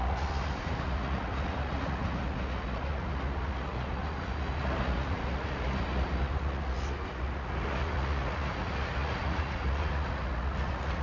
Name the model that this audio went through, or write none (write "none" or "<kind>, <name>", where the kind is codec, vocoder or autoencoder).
vocoder, Vocos